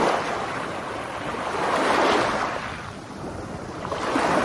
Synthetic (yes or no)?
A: no